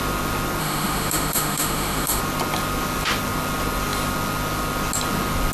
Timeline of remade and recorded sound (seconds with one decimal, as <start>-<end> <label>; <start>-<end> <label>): 0.0-0.6 recorded; 0.6-2.2 remade; 2.2-5.5 recorded